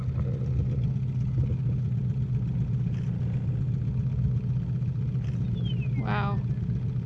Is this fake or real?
real